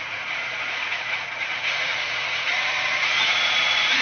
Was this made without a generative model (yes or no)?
no